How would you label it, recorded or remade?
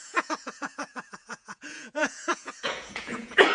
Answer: remade